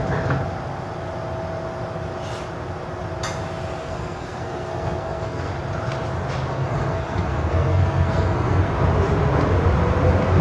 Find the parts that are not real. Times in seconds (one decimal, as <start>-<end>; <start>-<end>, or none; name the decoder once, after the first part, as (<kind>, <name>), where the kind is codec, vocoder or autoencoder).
3.8-5.5 (codec, SNAC); 6.5-8.7